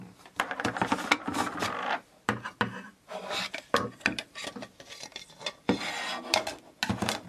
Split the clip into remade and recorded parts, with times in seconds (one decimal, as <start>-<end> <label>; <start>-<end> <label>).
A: 0.0-7.3 recorded

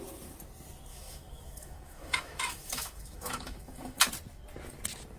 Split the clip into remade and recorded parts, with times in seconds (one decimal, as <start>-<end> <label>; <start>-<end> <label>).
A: 0.0-0.9 recorded; 0.9-4.0 remade; 4.0-5.2 recorded

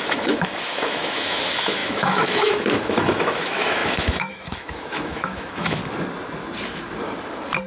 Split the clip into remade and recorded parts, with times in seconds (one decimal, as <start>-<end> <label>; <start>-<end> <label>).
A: 0.0-5.8 remade; 5.8-7.7 recorded

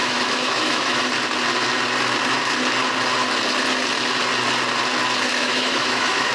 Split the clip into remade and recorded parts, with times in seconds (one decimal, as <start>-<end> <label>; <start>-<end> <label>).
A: 0.0-1.0 remade; 1.0-5.3 recorded; 5.3-6.3 remade

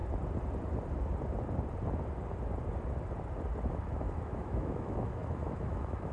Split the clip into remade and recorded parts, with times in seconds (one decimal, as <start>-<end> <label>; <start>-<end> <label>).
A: 0.0-3.7 recorded; 3.7-6.1 remade

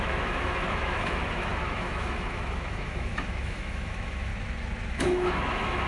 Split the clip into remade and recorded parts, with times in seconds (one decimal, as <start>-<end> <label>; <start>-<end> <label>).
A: 0.0-4.3 remade; 4.3-4.9 recorded; 4.9-5.9 remade